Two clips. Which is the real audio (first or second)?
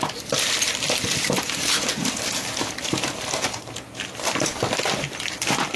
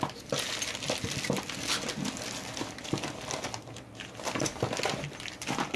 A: second